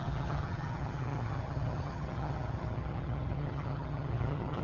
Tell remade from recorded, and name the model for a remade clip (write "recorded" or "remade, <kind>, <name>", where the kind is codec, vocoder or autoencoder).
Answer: remade, vocoder, HiFi-GAN